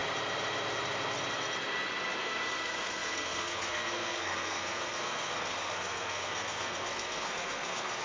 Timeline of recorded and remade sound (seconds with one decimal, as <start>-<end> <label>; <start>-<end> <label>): 0.0-2.2 recorded; 2.2-8.0 remade